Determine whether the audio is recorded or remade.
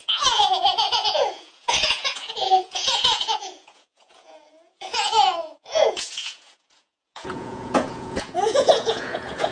remade